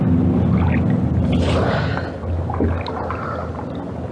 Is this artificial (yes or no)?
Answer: no